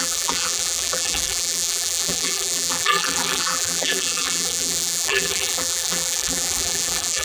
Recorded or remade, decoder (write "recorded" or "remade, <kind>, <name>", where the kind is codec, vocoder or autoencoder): remade, vocoder, BigVGAN v2